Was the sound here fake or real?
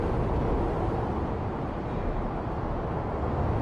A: real